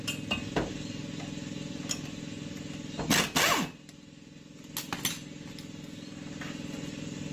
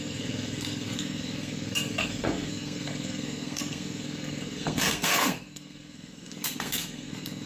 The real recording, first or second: first